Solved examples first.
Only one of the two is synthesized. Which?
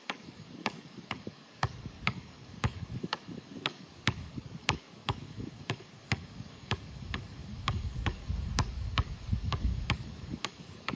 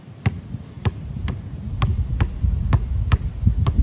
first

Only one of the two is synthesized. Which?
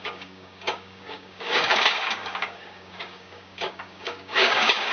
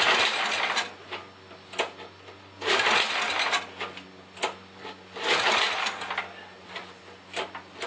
first